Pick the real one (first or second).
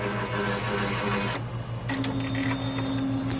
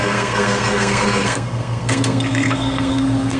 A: first